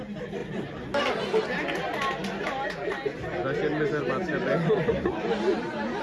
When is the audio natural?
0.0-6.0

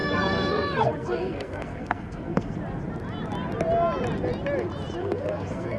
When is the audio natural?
2.6-5.0

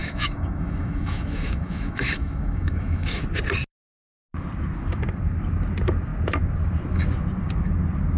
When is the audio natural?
3.2-8.2

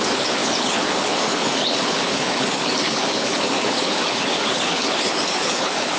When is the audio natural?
none

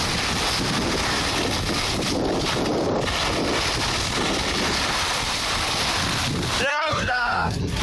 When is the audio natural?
0.0-6.7

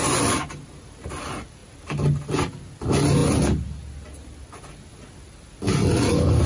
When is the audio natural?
0.0-6.5

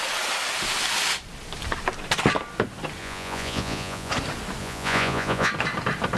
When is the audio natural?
0.0-3.0; 4.1-4.6; 5.5-6.2

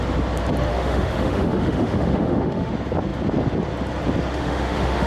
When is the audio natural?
0.0-0.7; 2.7-4.3